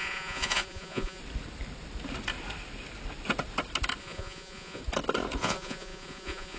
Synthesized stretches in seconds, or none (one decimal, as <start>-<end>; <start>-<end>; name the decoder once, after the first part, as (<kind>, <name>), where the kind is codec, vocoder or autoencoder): 0.0-1.2 (vocoder, Vocos); 4.0-4.8; 5.4-6.6